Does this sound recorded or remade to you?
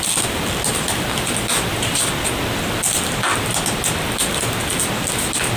recorded